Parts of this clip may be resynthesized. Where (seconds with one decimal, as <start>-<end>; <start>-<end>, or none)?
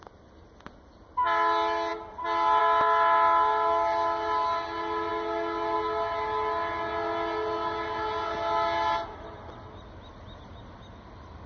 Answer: none